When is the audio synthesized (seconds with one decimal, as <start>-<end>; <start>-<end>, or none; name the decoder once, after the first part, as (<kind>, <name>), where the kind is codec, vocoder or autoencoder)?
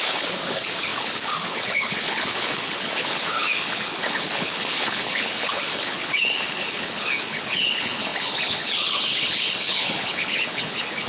0.0-11.1 (codec, HILCodec)